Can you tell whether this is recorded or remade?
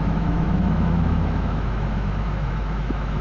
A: remade